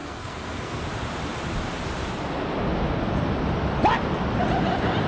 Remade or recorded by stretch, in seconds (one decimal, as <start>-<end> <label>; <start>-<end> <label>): 0.0-0.8 remade; 0.8-5.1 recorded